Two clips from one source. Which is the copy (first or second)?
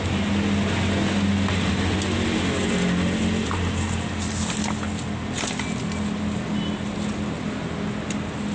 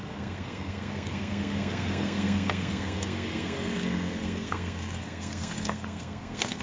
second